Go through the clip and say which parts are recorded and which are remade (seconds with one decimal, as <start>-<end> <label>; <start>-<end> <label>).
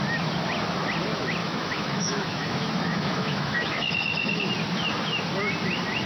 0.0-1.4 recorded; 1.4-4.5 remade; 4.5-6.1 recorded